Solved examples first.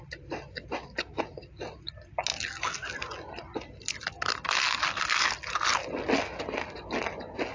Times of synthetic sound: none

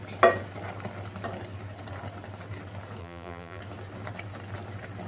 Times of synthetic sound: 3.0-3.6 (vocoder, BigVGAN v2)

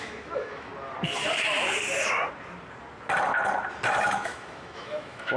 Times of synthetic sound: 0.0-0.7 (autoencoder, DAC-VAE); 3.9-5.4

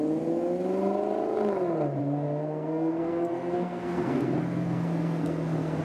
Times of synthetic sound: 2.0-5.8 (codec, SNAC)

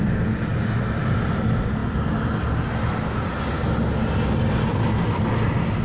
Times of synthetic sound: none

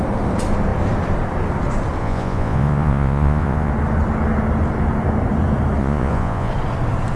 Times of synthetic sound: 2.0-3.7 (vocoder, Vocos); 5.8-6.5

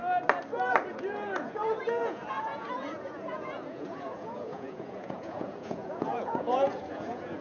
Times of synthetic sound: 0.9-7.4 (vocoder, Vocos)

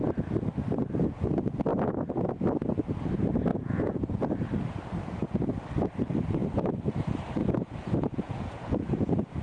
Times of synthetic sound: 1.7-2.3 (vocoder, Vocos); 3.5-4.2; 7.4-9.4